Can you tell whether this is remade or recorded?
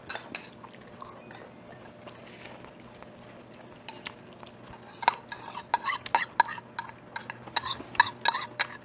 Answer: recorded